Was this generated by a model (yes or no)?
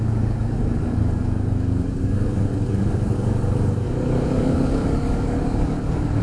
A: yes